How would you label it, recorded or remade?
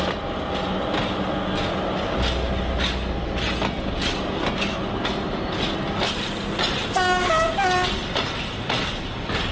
recorded